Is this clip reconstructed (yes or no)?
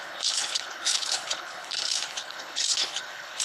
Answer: yes